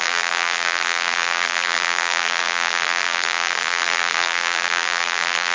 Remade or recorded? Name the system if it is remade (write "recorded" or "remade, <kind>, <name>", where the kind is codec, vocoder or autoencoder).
remade, vocoder, BigVGAN v2